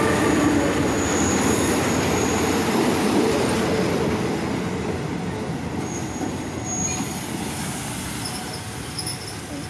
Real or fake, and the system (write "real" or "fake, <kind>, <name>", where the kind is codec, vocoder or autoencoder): real